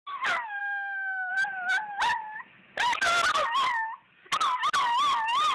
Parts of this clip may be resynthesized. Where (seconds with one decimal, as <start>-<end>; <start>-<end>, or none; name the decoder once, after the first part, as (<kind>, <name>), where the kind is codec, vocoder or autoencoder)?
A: 0.6-1.3 (autoencoder, DAC-VAE)

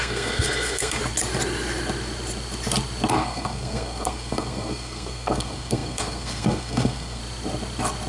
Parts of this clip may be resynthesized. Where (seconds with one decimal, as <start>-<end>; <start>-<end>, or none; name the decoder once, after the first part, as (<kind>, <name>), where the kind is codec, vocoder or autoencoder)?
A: 0.0-1.0 (codec, SNAC); 3.1-7.2